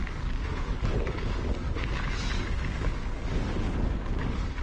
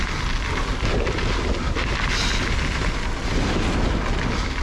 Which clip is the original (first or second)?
second